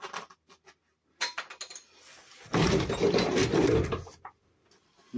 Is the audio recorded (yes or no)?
yes